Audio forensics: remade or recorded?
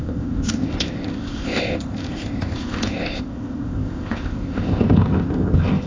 remade